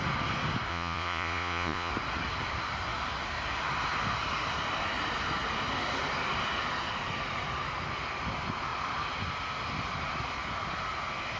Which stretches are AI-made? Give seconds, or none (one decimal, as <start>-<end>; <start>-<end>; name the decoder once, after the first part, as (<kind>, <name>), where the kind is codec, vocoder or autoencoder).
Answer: 0.7-1.9 (vocoder, Vocos)